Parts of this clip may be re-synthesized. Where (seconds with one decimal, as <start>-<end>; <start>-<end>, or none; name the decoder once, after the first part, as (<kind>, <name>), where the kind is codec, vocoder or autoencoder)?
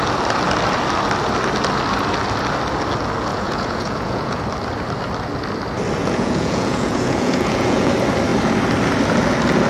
3.3-4.4 (vocoder, Vocos); 6.0-7.9